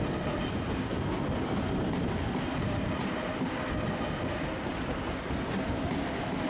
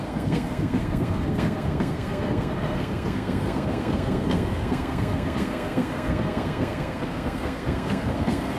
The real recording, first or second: first